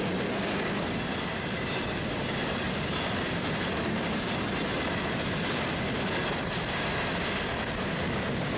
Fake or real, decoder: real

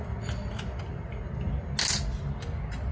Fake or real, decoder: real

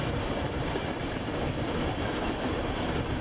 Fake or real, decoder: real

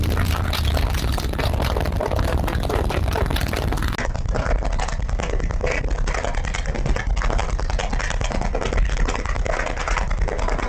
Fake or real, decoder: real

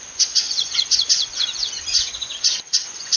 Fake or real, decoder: fake, vocoder, Vocos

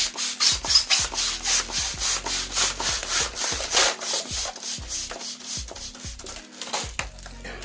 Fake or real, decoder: real